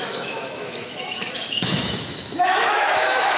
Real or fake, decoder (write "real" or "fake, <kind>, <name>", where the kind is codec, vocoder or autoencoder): fake, autoencoder, DAC-VAE